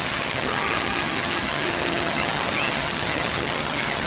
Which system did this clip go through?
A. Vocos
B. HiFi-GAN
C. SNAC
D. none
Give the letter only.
B